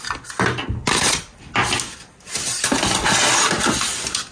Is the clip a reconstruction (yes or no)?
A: no